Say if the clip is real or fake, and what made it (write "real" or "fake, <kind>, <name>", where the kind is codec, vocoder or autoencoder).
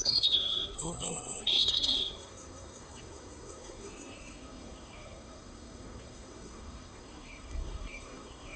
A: fake, codec, SNAC